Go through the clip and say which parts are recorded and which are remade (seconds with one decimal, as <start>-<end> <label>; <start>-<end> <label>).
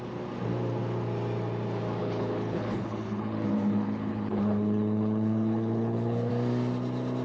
0.0-2.0 recorded; 2.0-6.3 remade; 6.3-7.2 recorded